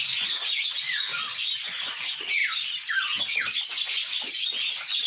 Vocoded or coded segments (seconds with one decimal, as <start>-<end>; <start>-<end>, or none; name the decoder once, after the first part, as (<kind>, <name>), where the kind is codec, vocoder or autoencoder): 0.0-1.1 (vocoder, Vocos); 1.9-2.4; 3.2-5.1